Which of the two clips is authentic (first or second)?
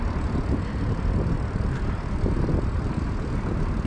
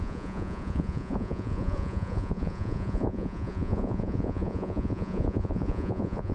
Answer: first